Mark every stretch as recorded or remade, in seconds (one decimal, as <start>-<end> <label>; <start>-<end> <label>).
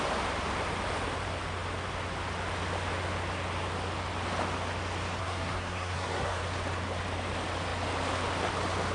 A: 0.0-5.2 recorded; 5.2-6.4 remade; 6.4-8.9 recorded